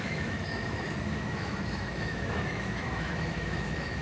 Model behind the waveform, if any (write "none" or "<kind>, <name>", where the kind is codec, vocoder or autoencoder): autoencoder, DAC-VAE